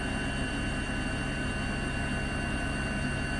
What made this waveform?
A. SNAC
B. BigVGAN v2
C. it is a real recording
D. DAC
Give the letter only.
C